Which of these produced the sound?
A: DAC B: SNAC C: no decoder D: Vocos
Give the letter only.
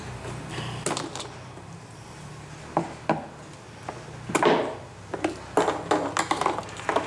C